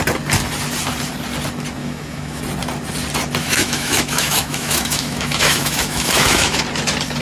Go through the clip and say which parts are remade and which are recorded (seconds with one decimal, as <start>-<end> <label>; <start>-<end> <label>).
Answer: 0.0-1.8 recorded; 1.8-2.4 remade; 2.4-3.4 recorded; 3.4-6.6 remade; 6.6-7.2 recorded